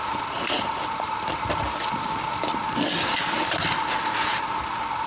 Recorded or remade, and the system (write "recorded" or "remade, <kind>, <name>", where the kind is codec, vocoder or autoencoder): recorded